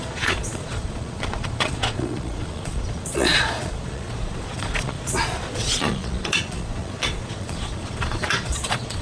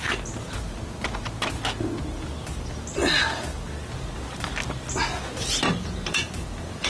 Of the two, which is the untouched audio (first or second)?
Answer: second